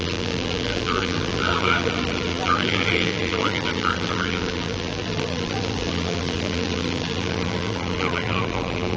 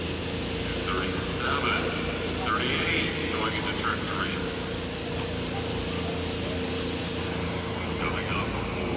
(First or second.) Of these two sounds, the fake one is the first